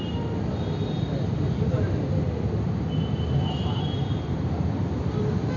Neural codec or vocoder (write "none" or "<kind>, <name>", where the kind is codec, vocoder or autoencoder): none